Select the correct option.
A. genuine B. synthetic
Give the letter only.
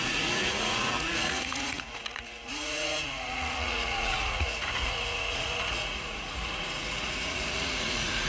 B